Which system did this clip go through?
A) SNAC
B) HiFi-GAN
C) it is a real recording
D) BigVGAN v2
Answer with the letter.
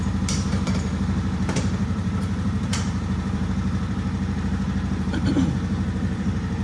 D